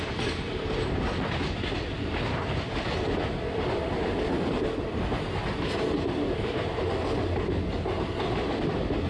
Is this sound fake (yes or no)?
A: no